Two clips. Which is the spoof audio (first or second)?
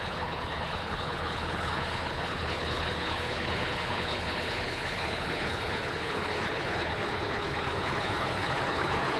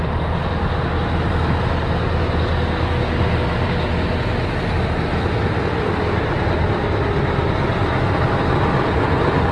first